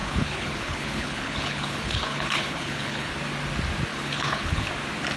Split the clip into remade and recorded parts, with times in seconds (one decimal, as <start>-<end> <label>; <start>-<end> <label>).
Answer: 0.0-3.1 remade; 3.1-3.9 recorded; 3.9-4.7 remade; 4.7-5.2 recorded